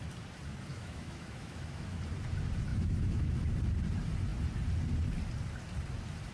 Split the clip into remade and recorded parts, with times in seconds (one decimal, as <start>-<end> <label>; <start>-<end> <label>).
0.0-0.7 recorded; 0.7-2.0 remade; 2.0-2.7 recorded; 2.7-3.4 remade; 3.4-6.3 recorded